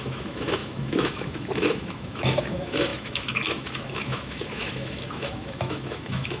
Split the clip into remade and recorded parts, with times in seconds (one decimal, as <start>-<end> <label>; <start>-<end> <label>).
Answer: 0.0-6.4 remade